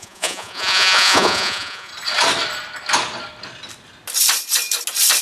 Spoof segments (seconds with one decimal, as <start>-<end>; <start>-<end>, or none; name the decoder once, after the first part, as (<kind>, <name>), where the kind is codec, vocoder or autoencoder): 0.0-1.9 (vocoder, Vocos)